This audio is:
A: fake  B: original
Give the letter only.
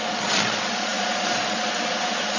A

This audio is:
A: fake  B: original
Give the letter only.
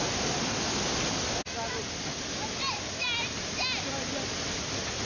B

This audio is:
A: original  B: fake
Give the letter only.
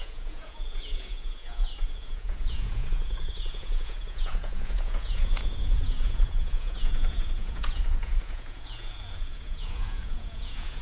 B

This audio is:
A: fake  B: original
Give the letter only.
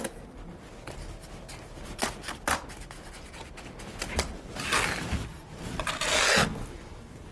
B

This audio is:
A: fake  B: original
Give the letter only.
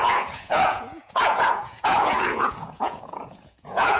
A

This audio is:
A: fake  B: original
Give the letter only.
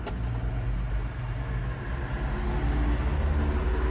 B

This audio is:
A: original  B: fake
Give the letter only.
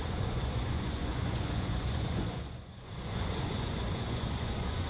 B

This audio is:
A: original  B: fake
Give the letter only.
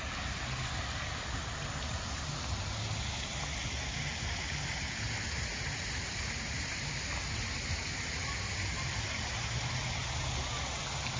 A